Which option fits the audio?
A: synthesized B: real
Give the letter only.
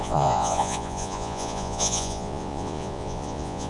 A